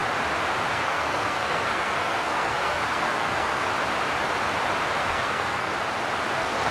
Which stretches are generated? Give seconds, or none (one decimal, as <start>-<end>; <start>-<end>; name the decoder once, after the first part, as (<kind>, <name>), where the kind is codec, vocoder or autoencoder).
0.7-3.7 (codec, SNAC); 5.0-5.7; 6.3-6.7